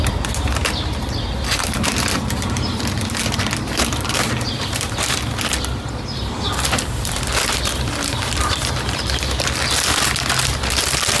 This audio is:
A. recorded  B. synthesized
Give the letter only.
B